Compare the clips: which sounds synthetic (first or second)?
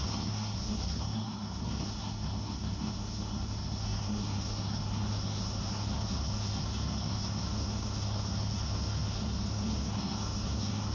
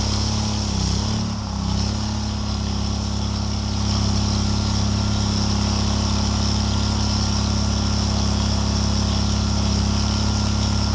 first